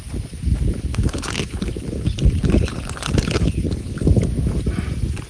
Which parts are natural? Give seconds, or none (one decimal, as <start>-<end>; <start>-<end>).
0.0-0.9; 4.1-5.3

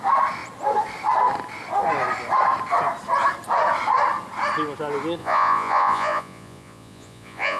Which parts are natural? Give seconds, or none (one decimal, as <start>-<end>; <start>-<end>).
0.0-5.2

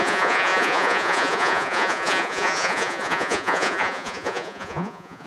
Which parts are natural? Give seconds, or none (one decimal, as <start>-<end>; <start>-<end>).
none

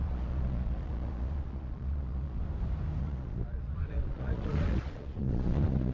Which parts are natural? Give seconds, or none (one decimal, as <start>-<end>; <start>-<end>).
2.4-3.0